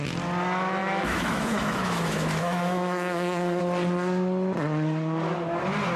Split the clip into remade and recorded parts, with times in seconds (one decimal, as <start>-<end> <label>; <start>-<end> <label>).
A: 0.0-0.8 recorded; 0.8-3.6 remade; 3.6-6.0 recorded